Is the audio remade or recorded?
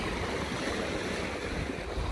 recorded